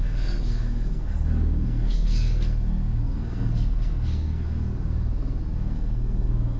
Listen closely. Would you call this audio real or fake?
fake